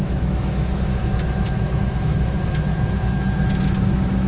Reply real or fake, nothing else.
fake